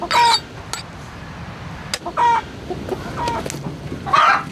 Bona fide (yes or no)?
yes